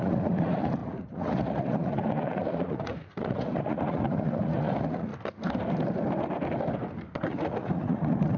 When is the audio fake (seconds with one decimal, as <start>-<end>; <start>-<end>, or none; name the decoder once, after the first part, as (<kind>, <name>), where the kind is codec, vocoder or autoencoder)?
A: 0.0-5.1 (vocoder, Vocos); 7.2-8.4